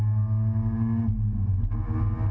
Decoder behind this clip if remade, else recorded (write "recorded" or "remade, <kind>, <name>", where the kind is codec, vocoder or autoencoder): recorded